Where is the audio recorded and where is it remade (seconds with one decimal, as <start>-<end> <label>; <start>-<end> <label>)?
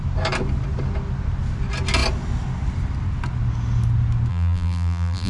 0.0-4.3 recorded; 4.3-5.3 remade